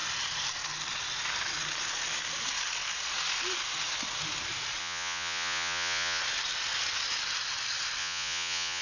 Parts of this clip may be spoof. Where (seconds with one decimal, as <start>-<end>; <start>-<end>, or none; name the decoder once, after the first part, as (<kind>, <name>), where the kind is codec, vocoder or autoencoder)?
4.8-6.2 (vocoder, Vocos); 8.0-8.8